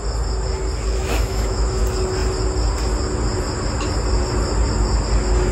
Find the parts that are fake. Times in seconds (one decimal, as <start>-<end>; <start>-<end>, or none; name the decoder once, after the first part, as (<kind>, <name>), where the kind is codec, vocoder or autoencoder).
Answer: 1.0-1.8 (autoencoder, DAC-VAE)